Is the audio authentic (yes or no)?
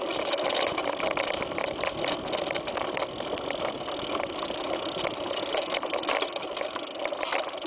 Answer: yes